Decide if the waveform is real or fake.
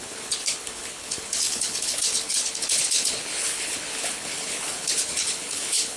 fake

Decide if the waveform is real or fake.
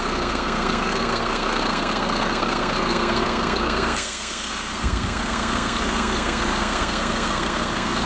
fake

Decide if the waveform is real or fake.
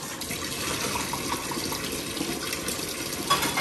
real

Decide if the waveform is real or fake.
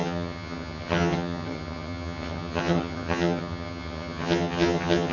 fake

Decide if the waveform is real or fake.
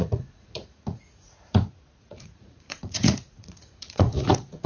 fake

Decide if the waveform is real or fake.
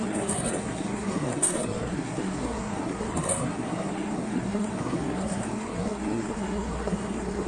fake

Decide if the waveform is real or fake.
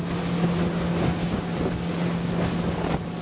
real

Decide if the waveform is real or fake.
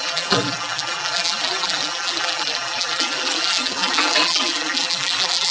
fake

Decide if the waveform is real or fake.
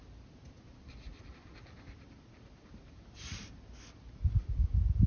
real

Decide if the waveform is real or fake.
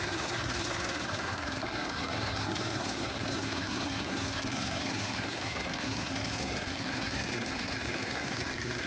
fake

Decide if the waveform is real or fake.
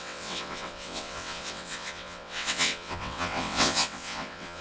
fake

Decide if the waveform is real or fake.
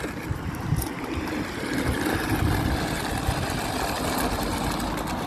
real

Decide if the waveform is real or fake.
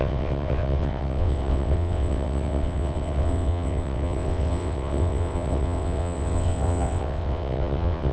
fake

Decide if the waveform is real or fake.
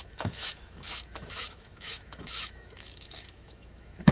fake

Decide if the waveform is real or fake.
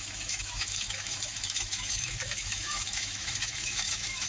fake